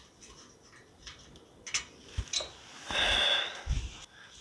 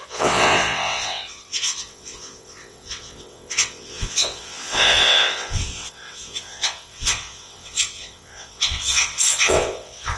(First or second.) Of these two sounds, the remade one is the second